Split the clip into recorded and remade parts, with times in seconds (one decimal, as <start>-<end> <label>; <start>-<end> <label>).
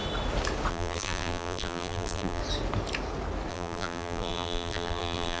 0.0-0.7 recorded; 0.7-2.4 remade; 2.4-3.5 recorded; 3.5-5.4 remade